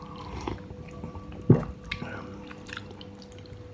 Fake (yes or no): no